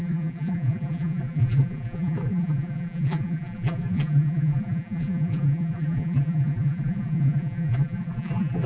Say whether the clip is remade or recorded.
remade